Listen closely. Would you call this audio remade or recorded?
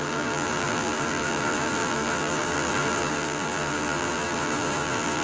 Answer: remade